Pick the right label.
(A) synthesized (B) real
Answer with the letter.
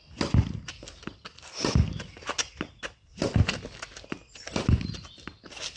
B